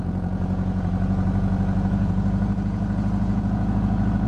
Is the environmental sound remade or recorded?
remade